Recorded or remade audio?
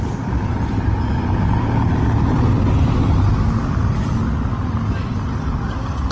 recorded